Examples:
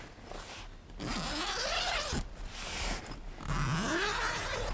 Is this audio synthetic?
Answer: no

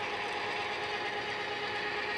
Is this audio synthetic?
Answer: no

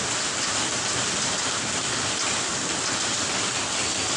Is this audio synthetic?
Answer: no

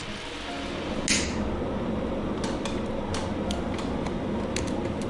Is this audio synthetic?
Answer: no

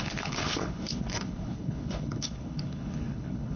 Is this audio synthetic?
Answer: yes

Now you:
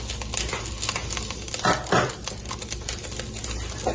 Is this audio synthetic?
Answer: no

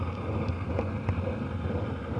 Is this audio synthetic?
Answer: no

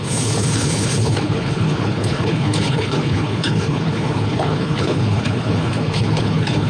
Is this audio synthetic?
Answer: yes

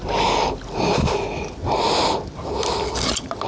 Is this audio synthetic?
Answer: no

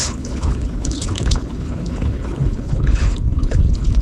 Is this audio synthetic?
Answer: yes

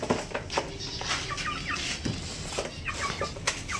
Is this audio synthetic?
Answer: no